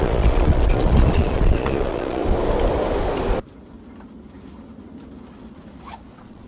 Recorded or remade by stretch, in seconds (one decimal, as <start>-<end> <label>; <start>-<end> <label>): 0.0-2.2 remade; 2.2-6.1 recorded; 6.1-6.5 remade